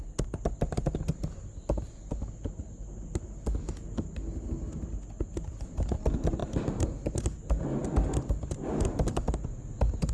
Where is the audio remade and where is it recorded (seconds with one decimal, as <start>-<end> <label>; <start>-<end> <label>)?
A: 0.0-10.1 recorded